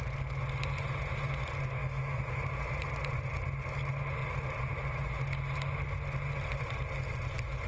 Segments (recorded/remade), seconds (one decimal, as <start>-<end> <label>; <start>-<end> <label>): 0.0-1.8 recorded; 1.8-2.4 remade; 2.4-7.7 recorded